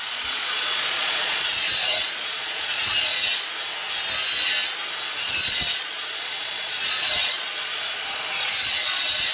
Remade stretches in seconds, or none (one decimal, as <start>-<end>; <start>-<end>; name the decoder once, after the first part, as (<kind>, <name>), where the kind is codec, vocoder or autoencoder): 0.0-3.1 (vocoder, Vocos); 5.1-9.3

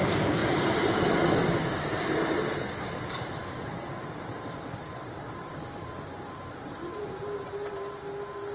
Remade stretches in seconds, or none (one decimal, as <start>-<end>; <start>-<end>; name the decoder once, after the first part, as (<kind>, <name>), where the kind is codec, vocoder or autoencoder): 0.4-1.0 (vocoder, BigVGAN v2); 2.8-7.2

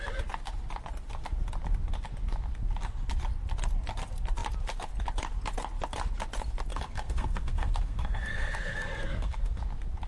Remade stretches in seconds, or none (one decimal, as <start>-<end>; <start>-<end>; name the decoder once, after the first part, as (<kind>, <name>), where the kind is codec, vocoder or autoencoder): 6.7-9.6 (codec, SNAC)

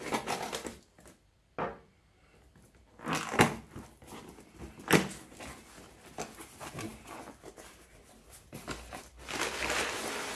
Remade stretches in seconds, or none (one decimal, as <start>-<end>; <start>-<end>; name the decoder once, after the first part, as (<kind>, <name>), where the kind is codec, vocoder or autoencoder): none

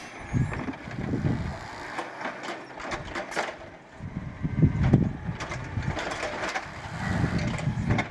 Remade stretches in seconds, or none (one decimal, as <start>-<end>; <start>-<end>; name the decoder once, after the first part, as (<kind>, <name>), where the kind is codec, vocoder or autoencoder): none

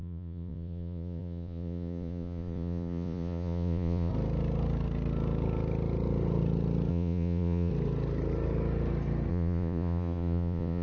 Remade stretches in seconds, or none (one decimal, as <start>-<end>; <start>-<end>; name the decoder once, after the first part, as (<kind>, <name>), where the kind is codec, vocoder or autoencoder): 0.0-4.1 (vocoder, Vocos); 6.9-7.7; 9.3-10.8

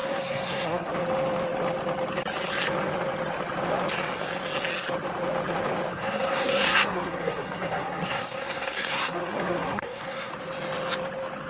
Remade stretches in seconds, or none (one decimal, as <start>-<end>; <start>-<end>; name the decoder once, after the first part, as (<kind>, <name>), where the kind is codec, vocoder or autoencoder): 0.0-0.9 (codec, SNAC); 5.9-10.3

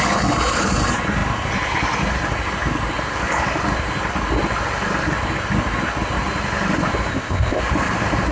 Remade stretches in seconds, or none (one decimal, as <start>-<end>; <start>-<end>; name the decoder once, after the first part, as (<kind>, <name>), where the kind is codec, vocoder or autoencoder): 7.1-7.6 (codec, ZipCodec)